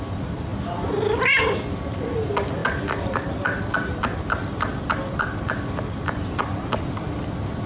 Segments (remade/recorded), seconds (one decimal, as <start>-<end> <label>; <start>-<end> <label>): 0.0-7.7 recorded